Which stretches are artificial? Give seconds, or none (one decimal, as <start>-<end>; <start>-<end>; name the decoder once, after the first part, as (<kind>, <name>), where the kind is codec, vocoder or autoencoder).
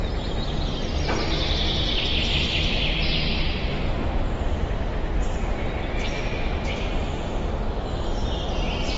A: none